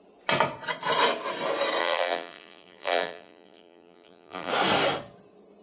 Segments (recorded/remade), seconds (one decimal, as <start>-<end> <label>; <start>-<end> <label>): 0.0-1.8 recorded; 1.8-4.5 remade; 4.5-5.6 recorded